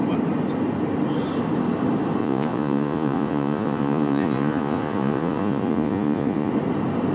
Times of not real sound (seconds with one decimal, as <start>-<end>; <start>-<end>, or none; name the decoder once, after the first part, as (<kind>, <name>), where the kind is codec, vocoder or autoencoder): 2.2-6.5 (vocoder, Vocos)